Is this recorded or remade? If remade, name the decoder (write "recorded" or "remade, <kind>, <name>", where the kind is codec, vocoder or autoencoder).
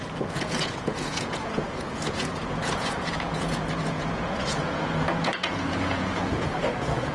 remade, vocoder, Vocos